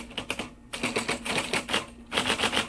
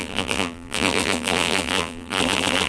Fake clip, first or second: second